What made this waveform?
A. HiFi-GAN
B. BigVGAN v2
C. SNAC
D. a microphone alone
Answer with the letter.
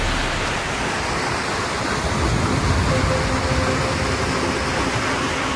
D